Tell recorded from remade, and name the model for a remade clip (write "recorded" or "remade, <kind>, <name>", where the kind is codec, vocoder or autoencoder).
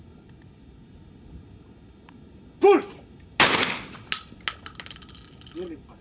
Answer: recorded